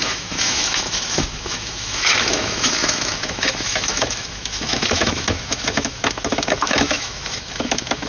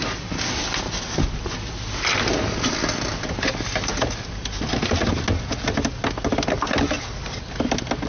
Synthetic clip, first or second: first